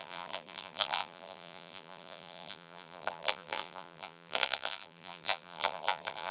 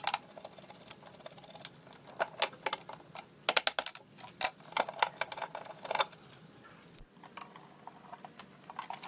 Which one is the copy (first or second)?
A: first